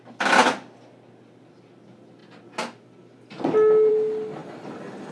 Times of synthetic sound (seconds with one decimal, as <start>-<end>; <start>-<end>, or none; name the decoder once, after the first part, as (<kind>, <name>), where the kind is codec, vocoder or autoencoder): none